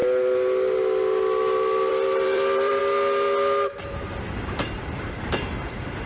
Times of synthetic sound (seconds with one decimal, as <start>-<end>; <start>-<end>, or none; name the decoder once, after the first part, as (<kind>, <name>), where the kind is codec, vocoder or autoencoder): 1.9-2.8 (vocoder, BigVGAN v2)